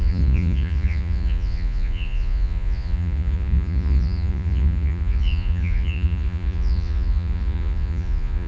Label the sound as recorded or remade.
remade